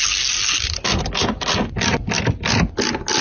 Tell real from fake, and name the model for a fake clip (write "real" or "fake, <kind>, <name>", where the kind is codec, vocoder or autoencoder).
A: real